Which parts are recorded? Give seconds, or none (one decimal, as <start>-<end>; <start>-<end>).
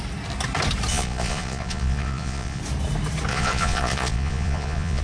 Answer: 0.0-0.9; 2.6-3.3